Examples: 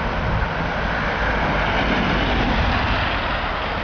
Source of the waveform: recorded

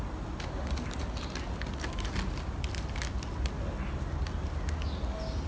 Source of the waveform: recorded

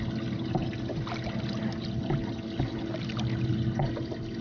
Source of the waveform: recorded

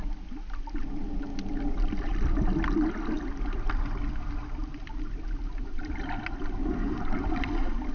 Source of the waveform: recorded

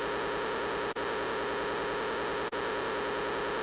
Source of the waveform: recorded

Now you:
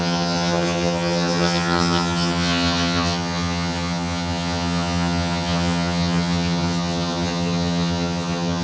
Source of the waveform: remade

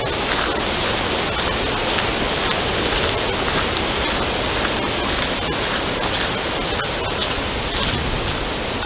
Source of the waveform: recorded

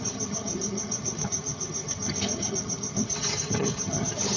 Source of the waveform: remade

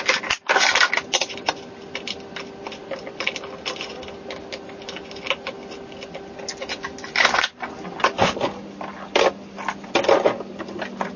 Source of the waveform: recorded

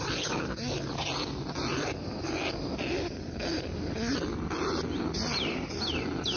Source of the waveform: recorded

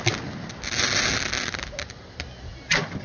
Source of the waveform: recorded